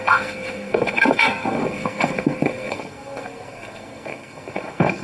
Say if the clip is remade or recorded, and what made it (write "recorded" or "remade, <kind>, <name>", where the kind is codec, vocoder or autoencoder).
remade, codec, SNAC